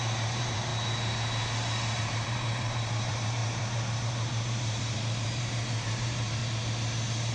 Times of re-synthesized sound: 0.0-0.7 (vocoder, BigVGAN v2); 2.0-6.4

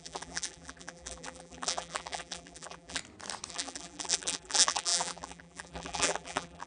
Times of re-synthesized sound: 0.0-3.0 (vocoder, BigVGAN v2); 3.5-6.7

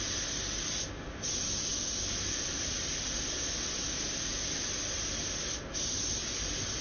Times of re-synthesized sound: none

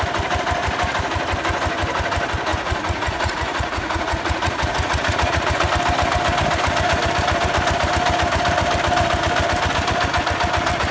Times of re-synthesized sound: 2.5-5.7 (vocoder, Vocos)

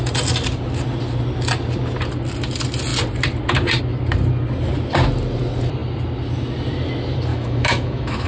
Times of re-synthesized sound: 7.3-8.3 (autoencoder, DAC-VAE)

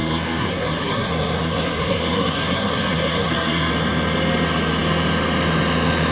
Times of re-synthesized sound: 0.0-3.7 (codec, SNAC)

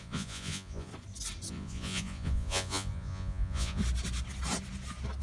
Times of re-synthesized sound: 0.0-0.9 (vocoder, Vocos); 1.5-3.8

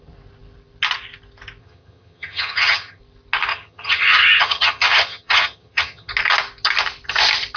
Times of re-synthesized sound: 1.6-3.0 (vocoder, HiFi-GAN); 3.5-6.1